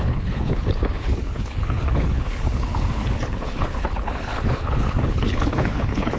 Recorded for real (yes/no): no